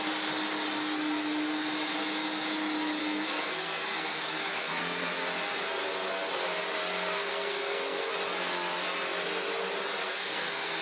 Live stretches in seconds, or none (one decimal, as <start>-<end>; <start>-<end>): 0.0-3.0; 5.1-7.3; 8.1-10.0